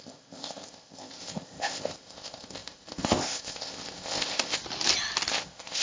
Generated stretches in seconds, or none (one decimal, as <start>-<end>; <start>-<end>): 0.0-4.6; 5.3-5.8